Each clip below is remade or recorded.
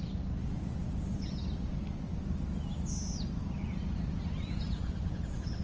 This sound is recorded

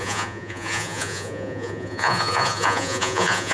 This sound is remade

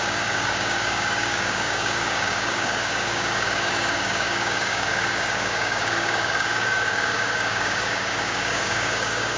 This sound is remade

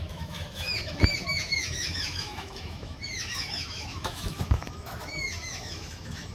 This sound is remade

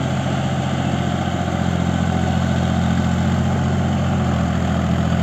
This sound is recorded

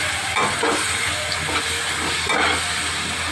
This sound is recorded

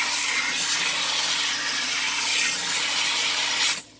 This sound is recorded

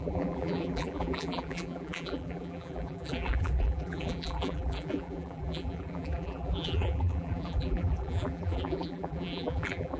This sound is remade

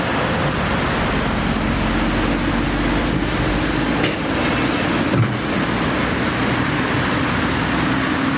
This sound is recorded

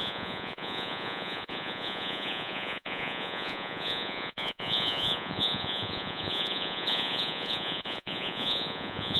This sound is remade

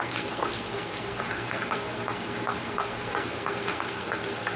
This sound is remade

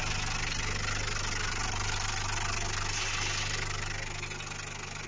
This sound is recorded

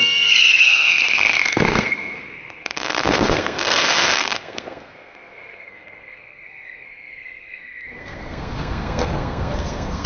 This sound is remade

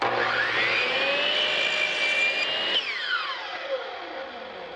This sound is recorded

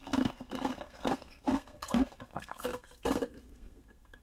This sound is remade